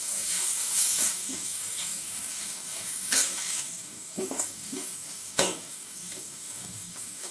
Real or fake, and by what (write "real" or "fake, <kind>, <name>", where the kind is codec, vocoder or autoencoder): fake, codec, DAC